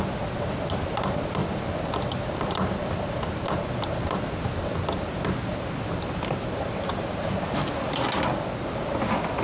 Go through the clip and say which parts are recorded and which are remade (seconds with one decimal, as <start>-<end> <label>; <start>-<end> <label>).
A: 0.0-9.4 recorded